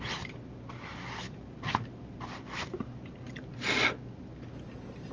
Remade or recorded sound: recorded